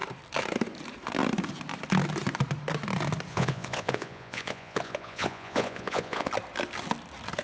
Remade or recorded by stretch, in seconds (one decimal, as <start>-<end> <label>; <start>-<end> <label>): 0.0-3.3 recorded; 3.3-6.3 remade; 6.3-7.4 recorded